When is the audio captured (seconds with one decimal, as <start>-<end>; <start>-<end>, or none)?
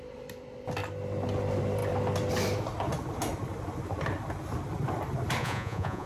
0.0-5.4